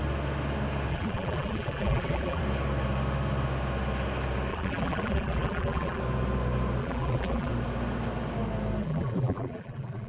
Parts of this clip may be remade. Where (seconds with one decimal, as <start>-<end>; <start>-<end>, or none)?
0.9-2.4; 4.5-6.0; 6.8-7.5; 8.8-10.1